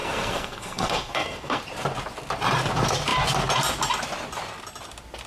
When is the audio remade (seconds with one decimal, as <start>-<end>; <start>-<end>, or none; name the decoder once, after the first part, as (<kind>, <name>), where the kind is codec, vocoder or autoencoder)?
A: 0.0-1.6 (codec, SNAC)